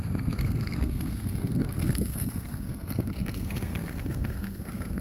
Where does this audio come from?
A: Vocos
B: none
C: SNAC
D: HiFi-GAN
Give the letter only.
C